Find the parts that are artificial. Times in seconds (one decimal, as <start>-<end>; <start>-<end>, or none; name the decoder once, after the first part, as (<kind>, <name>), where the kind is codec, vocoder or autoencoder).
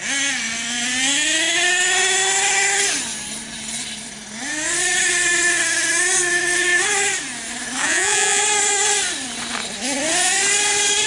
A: 7.8-8.4 (vocoder, Vocos)